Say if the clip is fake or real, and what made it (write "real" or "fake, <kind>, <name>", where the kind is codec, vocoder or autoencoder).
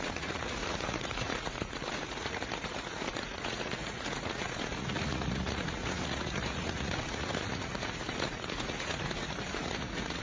fake, vocoder, Vocos